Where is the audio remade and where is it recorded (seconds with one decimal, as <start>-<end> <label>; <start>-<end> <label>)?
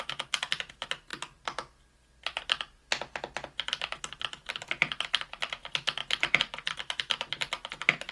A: 0.0-1.1 remade; 1.1-4.0 recorded; 4.0-8.1 remade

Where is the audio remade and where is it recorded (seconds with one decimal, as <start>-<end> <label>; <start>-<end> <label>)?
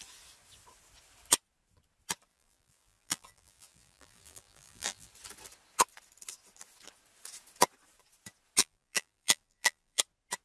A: 0.0-2.3 recorded; 2.3-5.1 remade; 5.1-8.6 recorded; 8.6-10.0 remade; 10.0-10.4 recorded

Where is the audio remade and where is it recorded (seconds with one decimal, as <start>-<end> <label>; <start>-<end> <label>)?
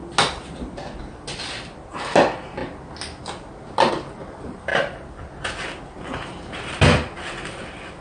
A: 0.0-8.0 recorded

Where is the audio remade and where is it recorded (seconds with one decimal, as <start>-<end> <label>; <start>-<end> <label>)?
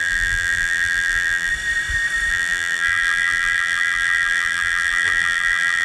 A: 0.0-1.5 remade; 1.5-2.3 recorded; 2.3-5.8 remade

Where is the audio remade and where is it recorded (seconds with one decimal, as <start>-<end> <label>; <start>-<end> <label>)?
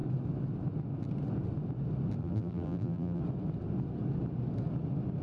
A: 0.0-2.2 recorded; 2.2-3.2 remade; 3.2-5.2 recorded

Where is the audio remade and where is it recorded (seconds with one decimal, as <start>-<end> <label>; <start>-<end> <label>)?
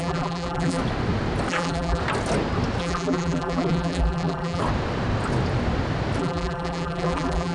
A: 0.0-0.8 remade; 0.8-1.5 recorded; 1.5-2.0 remade; 2.0-2.8 recorded; 2.8-4.6 remade; 4.6-6.2 recorded; 6.2-7.5 remade